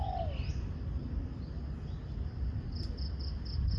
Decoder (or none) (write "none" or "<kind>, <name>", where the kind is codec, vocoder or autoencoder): none